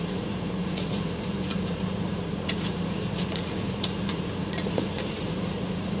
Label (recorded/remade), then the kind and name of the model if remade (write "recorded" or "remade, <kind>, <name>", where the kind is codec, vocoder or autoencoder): remade, vocoder, Vocos